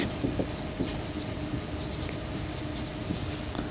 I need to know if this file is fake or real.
fake